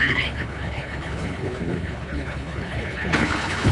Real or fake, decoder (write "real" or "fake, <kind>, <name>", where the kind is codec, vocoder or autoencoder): fake, codec, HILCodec